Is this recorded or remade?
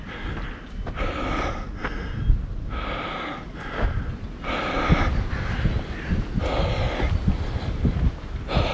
recorded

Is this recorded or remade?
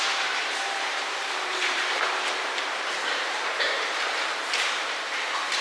remade